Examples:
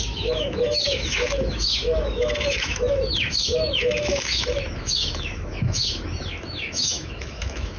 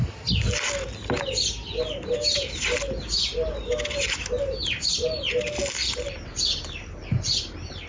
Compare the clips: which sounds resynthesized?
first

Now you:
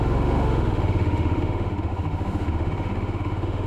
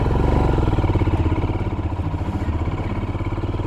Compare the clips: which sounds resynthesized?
first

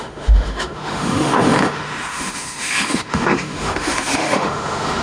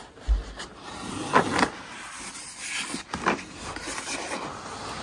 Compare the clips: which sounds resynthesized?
first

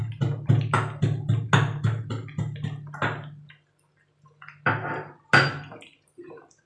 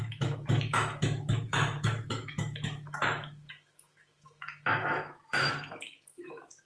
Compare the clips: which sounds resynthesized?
second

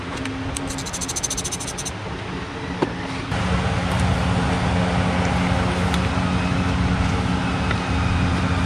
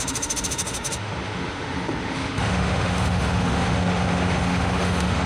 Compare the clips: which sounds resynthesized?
second